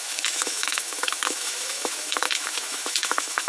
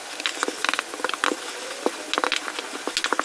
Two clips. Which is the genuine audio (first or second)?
second